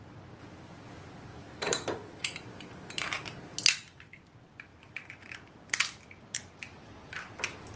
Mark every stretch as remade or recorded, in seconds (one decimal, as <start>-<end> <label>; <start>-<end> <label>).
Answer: 0.0-1.4 recorded; 1.4-2.8 remade; 2.8-4.7 recorded; 4.7-5.7 remade; 5.7-7.8 recorded